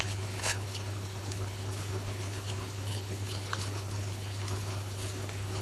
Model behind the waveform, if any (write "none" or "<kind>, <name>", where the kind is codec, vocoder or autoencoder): codec, HILCodec